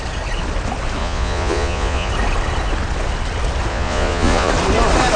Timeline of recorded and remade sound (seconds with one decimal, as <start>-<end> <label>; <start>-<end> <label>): 0.0-1.0 recorded; 1.0-2.1 remade; 2.1-3.7 recorded; 3.7-4.5 remade; 4.5-5.2 recorded